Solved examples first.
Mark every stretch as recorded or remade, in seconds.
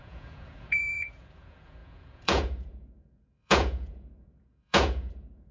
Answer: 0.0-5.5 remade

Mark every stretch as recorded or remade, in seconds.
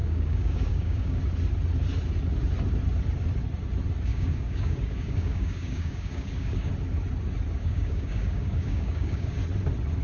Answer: 0.0-1.2 remade; 1.2-4.1 recorded; 4.1-6.7 remade; 6.7-7.6 recorded; 7.6-9.4 remade; 9.4-10.0 recorded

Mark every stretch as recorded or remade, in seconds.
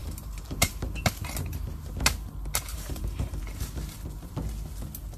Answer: 0.0-0.7 remade; 0.7-2.7 recorded; 2.7-3.4 remade; 3.4-5.2 recorded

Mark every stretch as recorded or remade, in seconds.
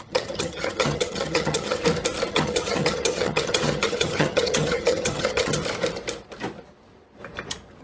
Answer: 0.0-1.8 remade; 1.8-2.3 recorded; 2.3-5.6 remade; 5.6-7.8 recorded